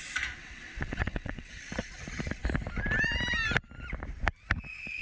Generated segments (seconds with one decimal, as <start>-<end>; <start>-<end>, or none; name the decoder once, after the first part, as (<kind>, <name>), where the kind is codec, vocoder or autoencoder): 0.4-1.6 (vocoder, WaveNeXt)